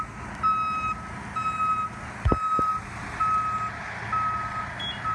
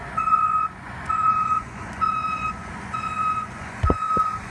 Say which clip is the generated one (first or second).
second